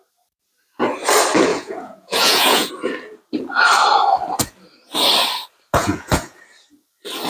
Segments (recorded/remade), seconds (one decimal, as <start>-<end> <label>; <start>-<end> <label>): 0.0-1.5 recorded; 1.5-2.7 remade; 2.7-5.8 recorded; 5.8-6.4 remade; 6.4-7.3 recorded